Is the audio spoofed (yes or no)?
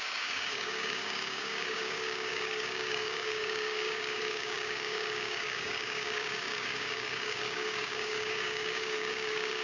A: yes